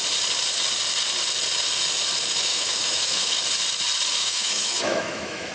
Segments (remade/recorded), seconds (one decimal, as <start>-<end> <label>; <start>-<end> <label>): 0.0-2.5 recorded; 2.5-3.4 remade; 3.4-4.2 recorded; 4.2-5.5 remade